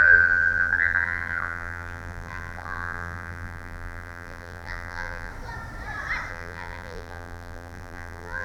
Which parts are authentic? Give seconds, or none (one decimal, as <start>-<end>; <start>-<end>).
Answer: 5.3-6.3